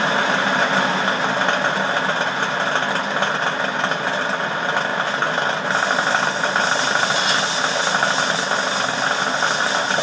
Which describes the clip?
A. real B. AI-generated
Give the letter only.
A